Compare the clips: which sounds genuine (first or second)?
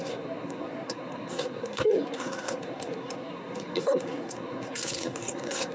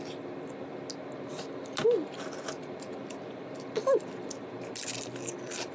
second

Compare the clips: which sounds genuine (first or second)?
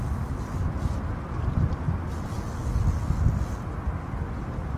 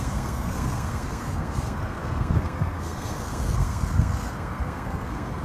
first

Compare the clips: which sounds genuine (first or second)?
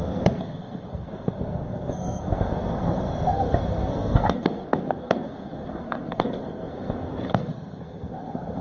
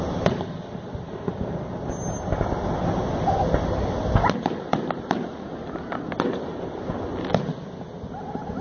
second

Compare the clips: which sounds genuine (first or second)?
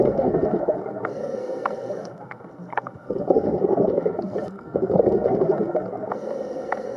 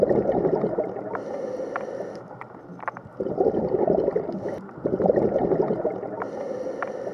second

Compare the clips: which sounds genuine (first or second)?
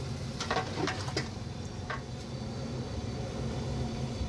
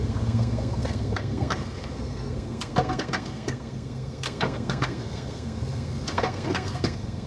first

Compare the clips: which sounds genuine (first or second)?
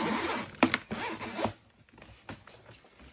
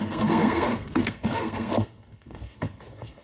first